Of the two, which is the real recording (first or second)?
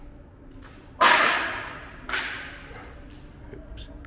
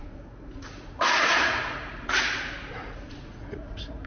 first